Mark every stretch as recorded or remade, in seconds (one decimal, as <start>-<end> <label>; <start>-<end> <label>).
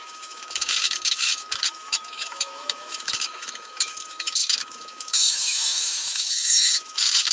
0.0-7.3 remade